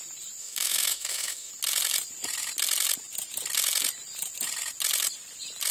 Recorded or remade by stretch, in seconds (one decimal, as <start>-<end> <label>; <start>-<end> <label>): 0.0-0.4 recorded; 0.4-1.5 remade; 1.5-5.7 recorded